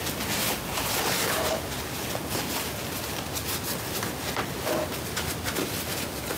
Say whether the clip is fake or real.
real